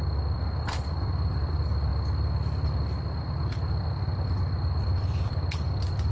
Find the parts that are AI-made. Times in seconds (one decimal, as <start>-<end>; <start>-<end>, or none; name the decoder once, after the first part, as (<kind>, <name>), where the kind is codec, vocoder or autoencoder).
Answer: 0.0-1.9 (vocoder, BigVGAN v2); 3.2-6.1